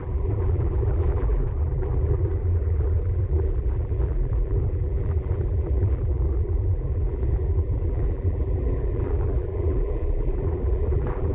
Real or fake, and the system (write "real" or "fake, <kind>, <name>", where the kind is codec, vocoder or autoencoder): fake, vocoder, BigVGAN v2